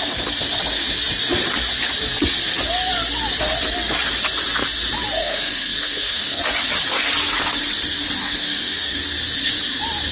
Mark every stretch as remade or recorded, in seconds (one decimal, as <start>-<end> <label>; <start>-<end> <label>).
0.0-5.2 recorded; 5.2-6.4 remade; 6.4-8.2 recorded; 8.2-9.0 remade; 9.0-10.1 recorded